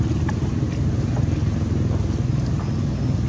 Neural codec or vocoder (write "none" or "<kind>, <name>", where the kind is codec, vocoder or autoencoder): none